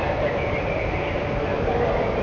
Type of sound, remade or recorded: recorded